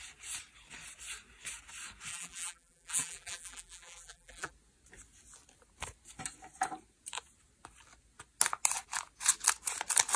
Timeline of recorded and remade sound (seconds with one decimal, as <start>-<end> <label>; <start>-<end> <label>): 0.0-2.1 recorded; 2.1-4.5 remade; 4.5-10.2 recorded